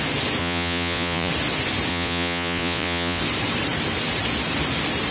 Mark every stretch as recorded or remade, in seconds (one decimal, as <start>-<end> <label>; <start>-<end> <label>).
0.0-0.4 recorded; 0.4-1.3 remade; 1.3-1.9 recorded; 1.9-3.2 remade; 3.2-5.1 recorded